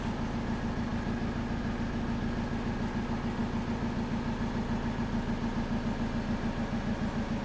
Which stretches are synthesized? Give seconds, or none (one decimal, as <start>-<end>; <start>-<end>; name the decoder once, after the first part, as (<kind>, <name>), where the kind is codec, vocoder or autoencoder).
none